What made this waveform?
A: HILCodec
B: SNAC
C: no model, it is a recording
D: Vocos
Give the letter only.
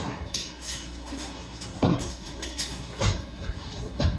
B